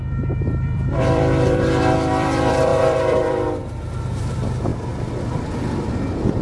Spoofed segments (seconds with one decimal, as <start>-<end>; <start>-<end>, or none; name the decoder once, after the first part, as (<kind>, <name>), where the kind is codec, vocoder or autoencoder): 0.0-4.7 (vocoder, BigVGAN v2); 5.9-6.4